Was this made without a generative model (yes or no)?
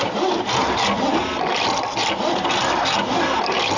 yes